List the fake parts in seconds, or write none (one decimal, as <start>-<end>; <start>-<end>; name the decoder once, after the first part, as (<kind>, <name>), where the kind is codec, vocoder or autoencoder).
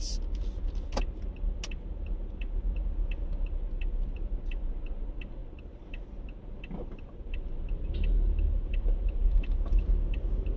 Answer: none